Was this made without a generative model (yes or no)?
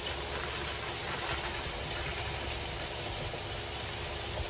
yes